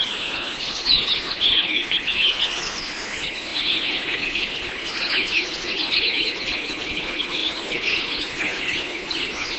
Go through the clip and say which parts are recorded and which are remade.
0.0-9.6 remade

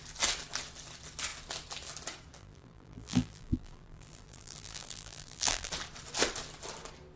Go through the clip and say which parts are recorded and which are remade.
0.0-2.4 recorded; 2.4-5.7 remade; 5.7-7.2 recorded

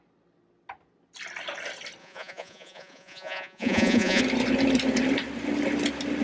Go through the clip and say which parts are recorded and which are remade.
0.0-2.0 recorded; 2.0-4.2 remade; 4.2-6.2 recorded

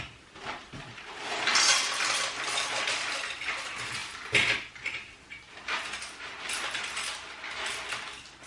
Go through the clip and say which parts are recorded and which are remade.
0.0-8.5 recorded

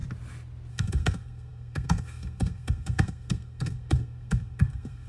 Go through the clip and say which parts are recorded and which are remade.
0.0-0.7 recorded; 0.7-5.1 remade

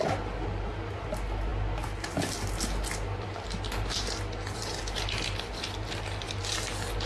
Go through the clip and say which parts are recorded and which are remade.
0.0-7.1 recorded